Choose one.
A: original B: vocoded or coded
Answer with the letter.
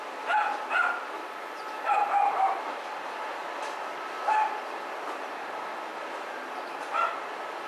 A